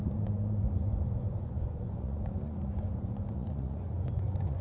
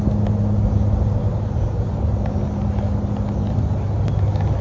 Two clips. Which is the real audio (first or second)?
second